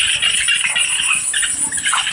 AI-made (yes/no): no